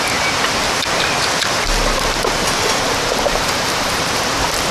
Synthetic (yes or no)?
yes